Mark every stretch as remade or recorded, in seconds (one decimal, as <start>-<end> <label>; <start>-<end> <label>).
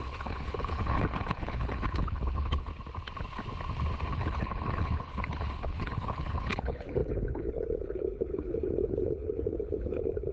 0.0-2.7 remade; 2.7-4.1 recorded; 4.1-10.3 remade